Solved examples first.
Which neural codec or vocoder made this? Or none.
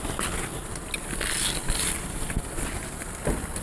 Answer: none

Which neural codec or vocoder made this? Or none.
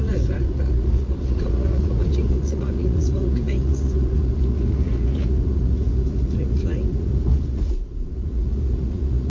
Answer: vocoder, Vocos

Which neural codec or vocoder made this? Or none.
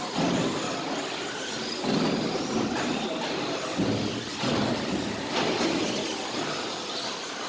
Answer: none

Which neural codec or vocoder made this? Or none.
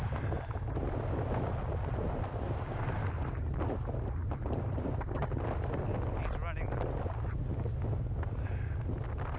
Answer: none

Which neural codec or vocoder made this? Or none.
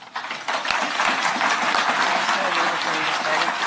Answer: none